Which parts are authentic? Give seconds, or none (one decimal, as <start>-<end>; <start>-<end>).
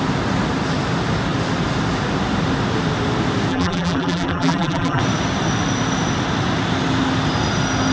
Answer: 0.0-3.5; 5.0-7.9